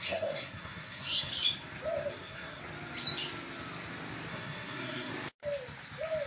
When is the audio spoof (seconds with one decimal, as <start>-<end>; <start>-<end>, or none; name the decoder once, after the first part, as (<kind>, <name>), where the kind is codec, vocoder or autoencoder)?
0.0-1.3 (codec, SNAC); 2.1-2.6; 4.3-5.1